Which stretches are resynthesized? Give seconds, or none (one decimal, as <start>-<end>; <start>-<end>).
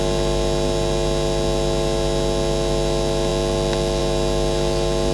none